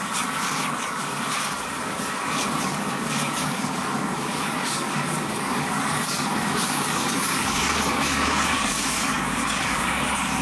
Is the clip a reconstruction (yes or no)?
yes